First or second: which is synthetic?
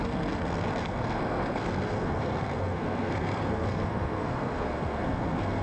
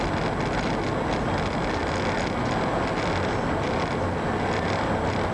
first